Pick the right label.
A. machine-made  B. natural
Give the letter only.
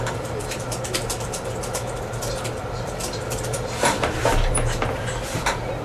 A